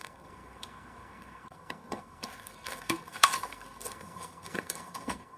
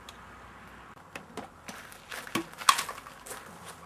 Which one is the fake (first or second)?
first